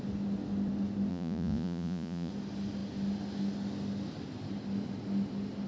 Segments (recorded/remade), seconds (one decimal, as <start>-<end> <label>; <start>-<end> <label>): 0.0-1.1 recorded; 1.1-2.3 remade; 2.3-5.7 recorded